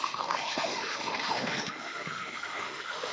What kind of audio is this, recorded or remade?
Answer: remade